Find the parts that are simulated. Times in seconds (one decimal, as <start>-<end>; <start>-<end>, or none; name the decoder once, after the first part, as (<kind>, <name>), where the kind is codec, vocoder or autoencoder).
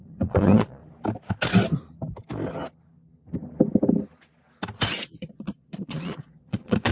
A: 0.0-0.8 (vocoder, Vocos); 4.9-6.9